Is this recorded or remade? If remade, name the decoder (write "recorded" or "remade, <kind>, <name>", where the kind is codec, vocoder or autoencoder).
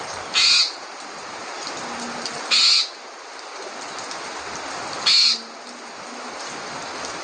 recorded